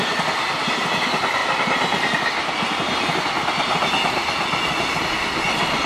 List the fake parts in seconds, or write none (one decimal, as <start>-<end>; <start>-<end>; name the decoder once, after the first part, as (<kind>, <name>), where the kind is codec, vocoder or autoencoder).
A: none